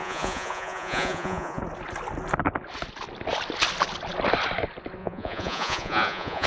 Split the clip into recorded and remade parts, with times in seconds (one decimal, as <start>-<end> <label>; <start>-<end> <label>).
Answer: 0.0-1.6 remade; 1.6-5.0 recorded; 5.0-6.5 remade